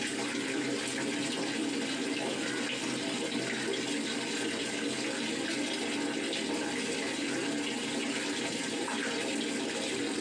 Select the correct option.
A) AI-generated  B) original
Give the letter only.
B